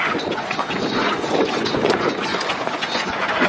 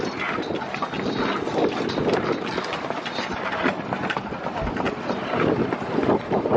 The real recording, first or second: second